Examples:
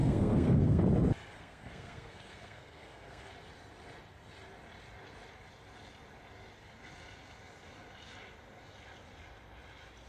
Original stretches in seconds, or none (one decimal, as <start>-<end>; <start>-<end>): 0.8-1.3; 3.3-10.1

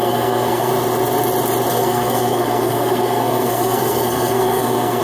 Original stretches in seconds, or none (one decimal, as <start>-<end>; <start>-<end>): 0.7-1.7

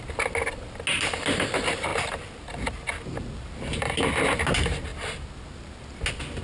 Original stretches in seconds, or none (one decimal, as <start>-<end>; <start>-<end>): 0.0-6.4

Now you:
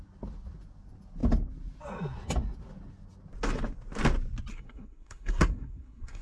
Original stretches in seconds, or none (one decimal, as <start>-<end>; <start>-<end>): 0.0-4.5

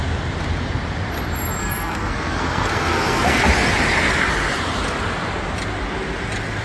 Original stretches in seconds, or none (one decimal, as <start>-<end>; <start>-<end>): 0.0-1.6; 3.4-6.6

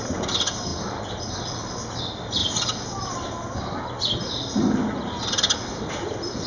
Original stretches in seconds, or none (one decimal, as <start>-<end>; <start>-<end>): 0.0-6.5

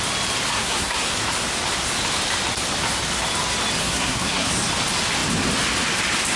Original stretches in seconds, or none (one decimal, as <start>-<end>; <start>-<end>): 0.0-0.5; 1.1-3.8; 4.5-6.4

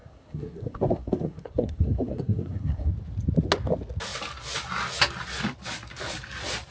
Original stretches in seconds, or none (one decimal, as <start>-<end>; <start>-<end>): 2.9-6.7